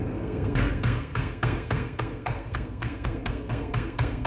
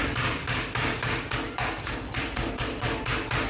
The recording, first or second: second